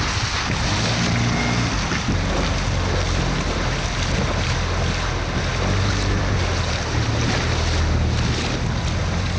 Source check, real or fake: real